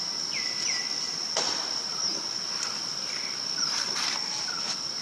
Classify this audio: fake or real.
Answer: real